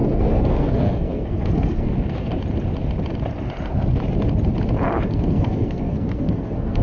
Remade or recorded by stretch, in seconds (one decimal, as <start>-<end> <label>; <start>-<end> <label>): 0.0-2.3 remade; 2.3-5.1 recorded; 5.1-6.8 remade